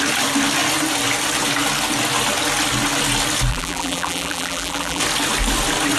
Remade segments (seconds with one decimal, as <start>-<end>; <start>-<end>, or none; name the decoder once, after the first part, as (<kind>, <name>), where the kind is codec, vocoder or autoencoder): 3.5-5.0 (vocoder, BigVGAN v2)